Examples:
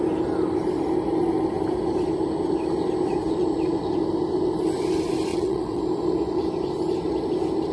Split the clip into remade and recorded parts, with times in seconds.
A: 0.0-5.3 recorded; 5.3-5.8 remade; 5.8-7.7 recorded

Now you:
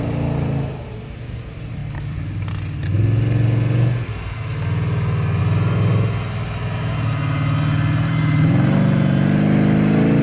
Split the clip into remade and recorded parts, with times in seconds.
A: 0.0-10.2 recorded

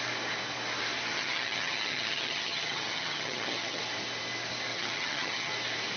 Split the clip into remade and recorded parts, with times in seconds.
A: 0.0-1.1 recorded; 1.1-3.8 remade; 3.8-4.7 recorded; 4.7-5.5 remade; 5.5-6.0 recorded